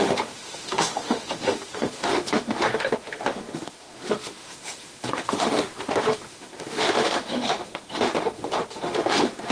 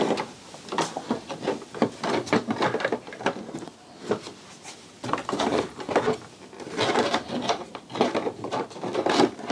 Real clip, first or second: second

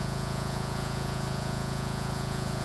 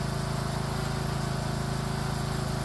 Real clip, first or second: second